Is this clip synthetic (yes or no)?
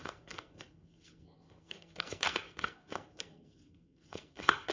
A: yes